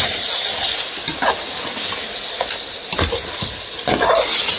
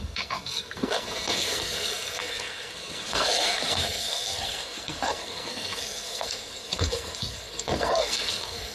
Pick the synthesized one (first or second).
second